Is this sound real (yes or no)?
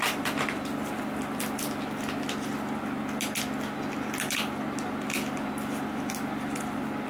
yes